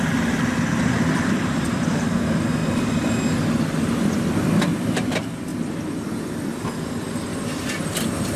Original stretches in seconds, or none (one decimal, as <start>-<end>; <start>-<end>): 2.6-4.4; 5.5-6.4